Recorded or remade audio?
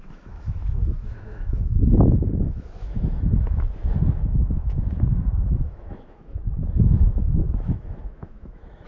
remade